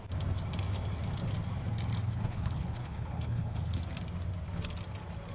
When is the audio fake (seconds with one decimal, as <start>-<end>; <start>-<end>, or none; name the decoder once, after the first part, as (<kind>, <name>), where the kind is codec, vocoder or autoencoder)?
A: 2.0-3.8 (codec, HILCodec)